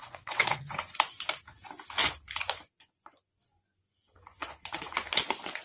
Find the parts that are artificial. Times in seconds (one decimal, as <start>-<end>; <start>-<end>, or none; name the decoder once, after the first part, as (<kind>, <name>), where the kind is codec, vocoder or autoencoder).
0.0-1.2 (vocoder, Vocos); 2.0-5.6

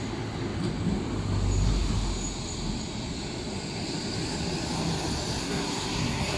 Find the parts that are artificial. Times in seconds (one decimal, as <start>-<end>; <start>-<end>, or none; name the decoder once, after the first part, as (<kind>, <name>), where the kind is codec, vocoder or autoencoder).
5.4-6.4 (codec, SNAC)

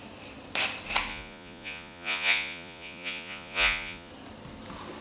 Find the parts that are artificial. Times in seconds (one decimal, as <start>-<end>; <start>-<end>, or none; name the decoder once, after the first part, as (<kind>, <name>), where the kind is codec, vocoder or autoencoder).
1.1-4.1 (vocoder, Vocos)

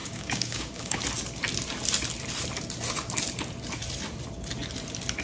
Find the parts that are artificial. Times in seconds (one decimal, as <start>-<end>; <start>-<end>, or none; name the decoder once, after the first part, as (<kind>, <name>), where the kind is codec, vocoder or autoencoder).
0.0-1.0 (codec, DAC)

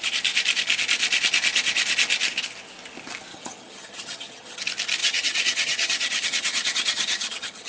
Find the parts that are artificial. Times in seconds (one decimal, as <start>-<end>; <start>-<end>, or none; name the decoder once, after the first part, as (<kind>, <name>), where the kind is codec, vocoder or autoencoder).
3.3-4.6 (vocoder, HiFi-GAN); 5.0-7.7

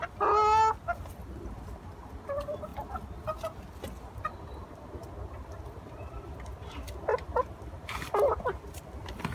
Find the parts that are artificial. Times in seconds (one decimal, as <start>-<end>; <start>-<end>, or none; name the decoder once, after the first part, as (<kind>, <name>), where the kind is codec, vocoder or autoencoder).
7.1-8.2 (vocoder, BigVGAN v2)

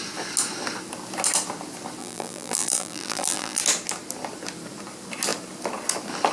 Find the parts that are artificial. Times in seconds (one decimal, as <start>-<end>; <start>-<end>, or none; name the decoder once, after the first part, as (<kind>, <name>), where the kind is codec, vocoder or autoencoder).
2.0-3.6 (vocoder, BigVGAN v2)

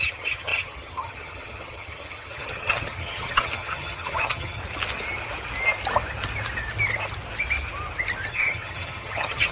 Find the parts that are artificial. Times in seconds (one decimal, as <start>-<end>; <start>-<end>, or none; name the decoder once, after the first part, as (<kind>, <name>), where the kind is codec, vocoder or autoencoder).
0.0-4.6 (vocoder, HiFi-GAN); 8.3-9.5